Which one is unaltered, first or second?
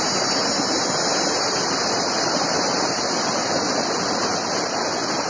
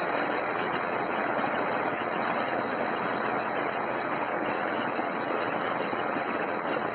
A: first